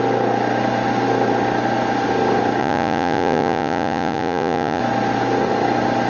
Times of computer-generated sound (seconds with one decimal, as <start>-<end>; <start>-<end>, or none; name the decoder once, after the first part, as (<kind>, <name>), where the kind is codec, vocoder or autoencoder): 2.6-4.8 (vocoder, Vocos)